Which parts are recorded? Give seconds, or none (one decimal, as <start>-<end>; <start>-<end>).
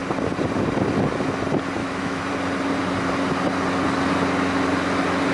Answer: 0.0-1.8; 2.3-5.3